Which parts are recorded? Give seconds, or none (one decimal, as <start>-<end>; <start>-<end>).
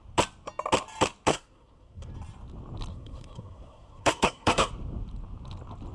0.0-1.3; 2.1-2.9; 4.7-5.9